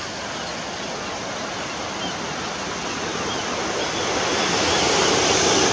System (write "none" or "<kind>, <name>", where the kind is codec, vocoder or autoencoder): none